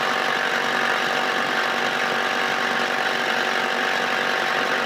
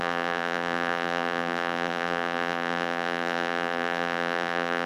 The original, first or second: first